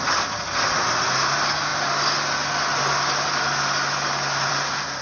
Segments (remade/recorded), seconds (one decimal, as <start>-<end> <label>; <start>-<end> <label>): 0.0-5.0 recorded